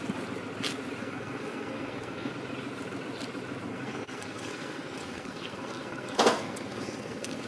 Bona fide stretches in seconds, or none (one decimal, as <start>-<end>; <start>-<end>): 0.0-1.0; 2.3-3.7